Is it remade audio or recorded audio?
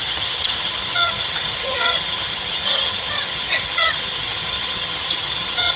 remade